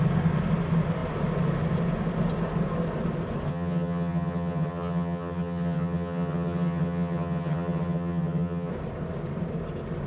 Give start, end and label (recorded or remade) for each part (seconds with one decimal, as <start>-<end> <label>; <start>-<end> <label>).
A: 0.0-3.5 recorded; 3.5-8.7 remade; 8.7-10.1 recorded